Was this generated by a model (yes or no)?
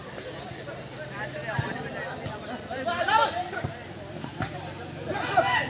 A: no